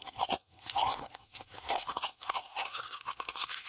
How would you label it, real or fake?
fake